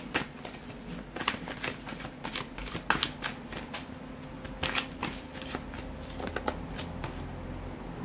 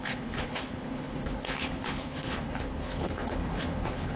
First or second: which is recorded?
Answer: first